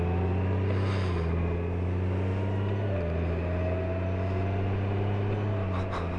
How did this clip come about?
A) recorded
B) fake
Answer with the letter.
A